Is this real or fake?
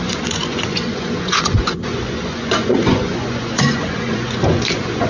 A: fake